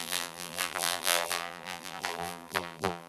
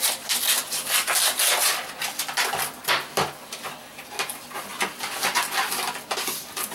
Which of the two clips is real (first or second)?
second